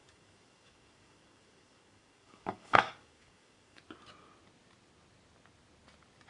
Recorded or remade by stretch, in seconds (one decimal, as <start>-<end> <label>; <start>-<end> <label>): 0.0-3.8 remade; 3.8-6.3 recorded